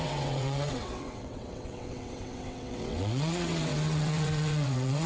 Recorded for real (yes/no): no